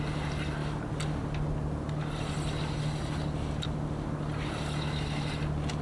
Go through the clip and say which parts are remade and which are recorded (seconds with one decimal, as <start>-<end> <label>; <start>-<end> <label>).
0.0-5.8 recorded